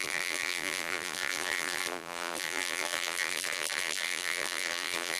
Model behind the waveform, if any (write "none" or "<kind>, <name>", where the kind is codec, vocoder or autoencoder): vocoder, BigVGAN v2